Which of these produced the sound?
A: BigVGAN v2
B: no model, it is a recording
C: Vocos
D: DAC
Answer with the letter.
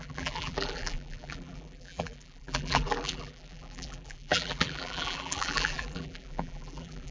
A